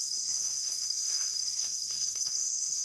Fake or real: fake